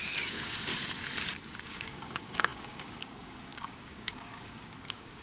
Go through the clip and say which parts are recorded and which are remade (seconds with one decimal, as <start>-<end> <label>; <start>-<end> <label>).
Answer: 0.0-0.7 remade; 0.7-1.6 recorded; 1.6-5.2 remade